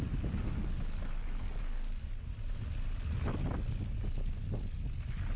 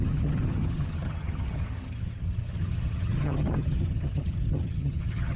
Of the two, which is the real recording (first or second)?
first